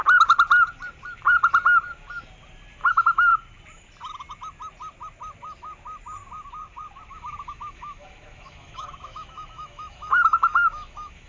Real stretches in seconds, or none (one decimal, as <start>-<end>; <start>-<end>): 0.0-2.9; 3.3-7.1